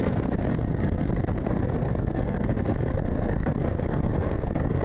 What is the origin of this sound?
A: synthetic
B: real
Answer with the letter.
A